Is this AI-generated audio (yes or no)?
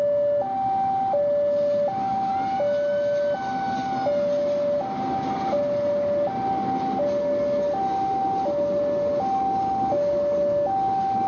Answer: no